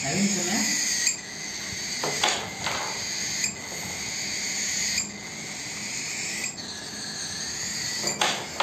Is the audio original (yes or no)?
yes